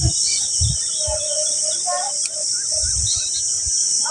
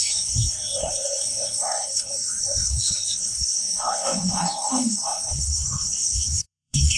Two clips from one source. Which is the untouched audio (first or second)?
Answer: first